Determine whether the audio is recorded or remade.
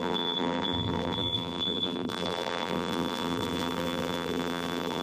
remade